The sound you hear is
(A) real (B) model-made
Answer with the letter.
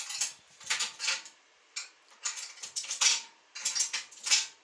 A